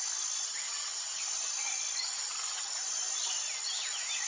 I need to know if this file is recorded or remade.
recorded